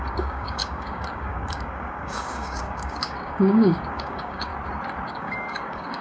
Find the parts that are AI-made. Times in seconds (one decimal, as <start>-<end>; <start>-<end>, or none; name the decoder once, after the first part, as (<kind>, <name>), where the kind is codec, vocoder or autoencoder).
0.0-4.5 (codec, DAC); 5.1-6.0